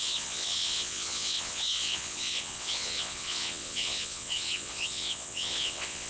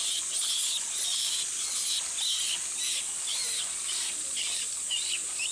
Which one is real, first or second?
second